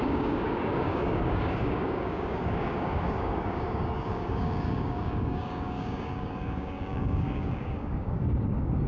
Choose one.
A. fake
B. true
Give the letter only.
A